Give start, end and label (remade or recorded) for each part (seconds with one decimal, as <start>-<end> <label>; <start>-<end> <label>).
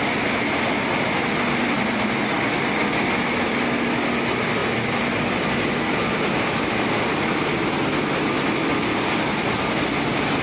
0.0-10.4 recorded